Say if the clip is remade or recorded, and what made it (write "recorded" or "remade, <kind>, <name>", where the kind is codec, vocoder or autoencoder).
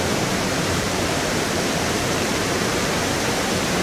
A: remade, vocoder, BigVGAN v2